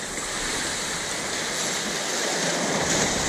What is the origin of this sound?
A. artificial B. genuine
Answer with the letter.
B